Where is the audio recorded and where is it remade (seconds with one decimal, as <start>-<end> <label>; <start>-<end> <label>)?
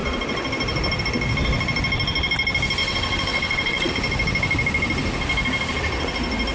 0.0-2.8 recorded; 2.8-3.9 remade; 3.9-6.5 recorded